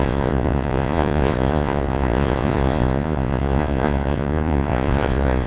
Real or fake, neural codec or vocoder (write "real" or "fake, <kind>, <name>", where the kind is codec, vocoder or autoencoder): fake, vocoder, Vocos